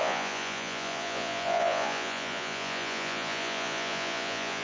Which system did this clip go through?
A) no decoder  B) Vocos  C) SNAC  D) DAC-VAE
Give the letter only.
B